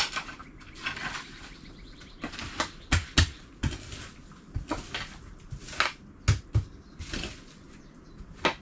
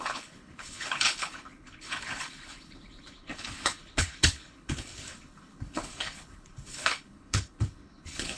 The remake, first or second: second